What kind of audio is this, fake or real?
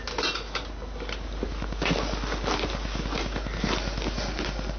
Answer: real